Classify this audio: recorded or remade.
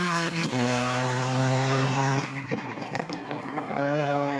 remade